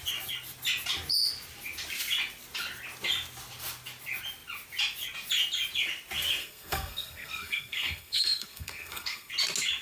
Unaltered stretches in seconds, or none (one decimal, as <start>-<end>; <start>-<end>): 0.0-6.4; 9.3-9.8